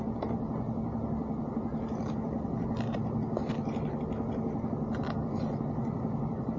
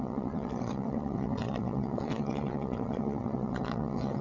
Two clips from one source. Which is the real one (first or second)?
first